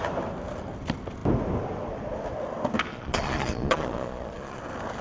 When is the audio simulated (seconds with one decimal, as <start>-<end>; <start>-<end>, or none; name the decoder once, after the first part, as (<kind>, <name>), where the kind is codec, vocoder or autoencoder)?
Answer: 2.9-4.6 (vocoder, Vocos)